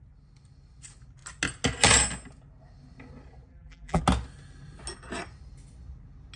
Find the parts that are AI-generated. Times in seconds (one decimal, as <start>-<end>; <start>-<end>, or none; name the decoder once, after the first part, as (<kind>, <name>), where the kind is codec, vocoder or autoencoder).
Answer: 3.5-4.0 (vocoder, BigVGAN v2)